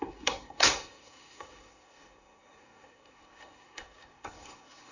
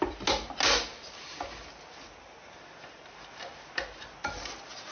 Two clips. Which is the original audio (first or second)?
second